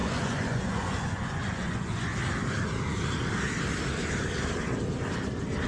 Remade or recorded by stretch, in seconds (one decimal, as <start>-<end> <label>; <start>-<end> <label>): 0.0-2.1 remade; 2.1-5.7 recorded